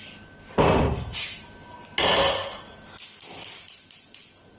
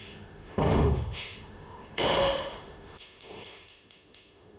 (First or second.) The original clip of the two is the first